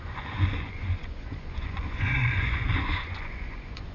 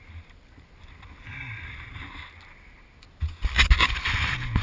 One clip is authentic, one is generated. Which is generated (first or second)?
first